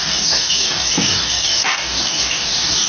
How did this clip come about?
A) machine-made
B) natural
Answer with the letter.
A